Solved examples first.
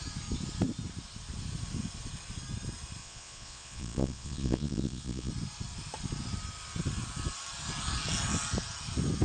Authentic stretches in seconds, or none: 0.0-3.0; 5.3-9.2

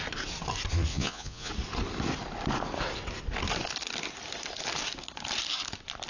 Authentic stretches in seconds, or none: 0.0-0.9; 1.5-6.1

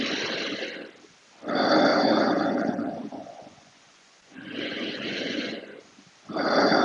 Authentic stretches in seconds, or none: 0.0-1.9; 6.0-6.8